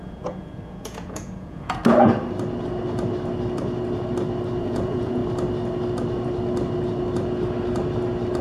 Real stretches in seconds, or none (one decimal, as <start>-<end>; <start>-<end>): 1.8-4.6; 5.2-8.4